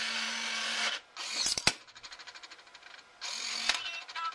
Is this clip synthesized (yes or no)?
no